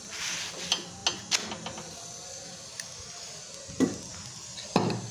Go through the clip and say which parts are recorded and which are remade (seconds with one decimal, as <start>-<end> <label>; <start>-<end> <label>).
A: 0.0-5.1 recorded